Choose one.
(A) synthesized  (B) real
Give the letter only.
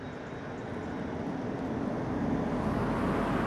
B